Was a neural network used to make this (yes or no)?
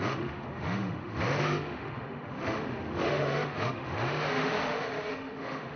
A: yes